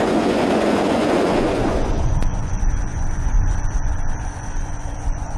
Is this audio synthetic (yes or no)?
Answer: yes